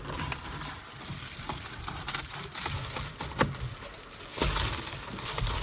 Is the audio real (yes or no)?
yes